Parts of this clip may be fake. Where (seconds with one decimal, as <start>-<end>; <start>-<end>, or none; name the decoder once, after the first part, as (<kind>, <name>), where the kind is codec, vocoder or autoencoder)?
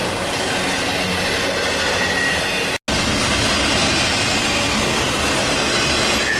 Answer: 0.0-0.5 (vocoder, BigVGAN v2)